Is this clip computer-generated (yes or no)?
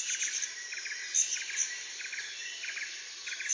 no